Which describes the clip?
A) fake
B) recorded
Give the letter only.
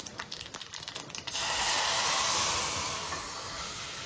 B